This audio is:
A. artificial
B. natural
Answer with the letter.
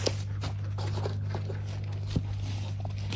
B